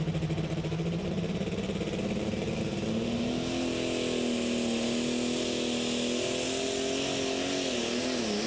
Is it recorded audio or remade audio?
recorded